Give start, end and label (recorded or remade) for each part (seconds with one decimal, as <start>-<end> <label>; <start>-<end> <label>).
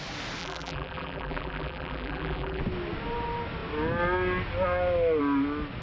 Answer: 0.0-0.4 recorded; 0.4-2.6 remade; 2.6-5.8 recorded